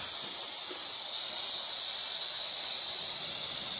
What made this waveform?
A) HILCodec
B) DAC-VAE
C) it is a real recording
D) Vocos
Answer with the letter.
C